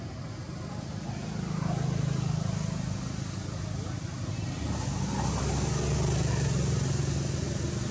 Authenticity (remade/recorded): recorded